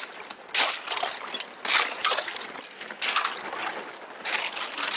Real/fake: real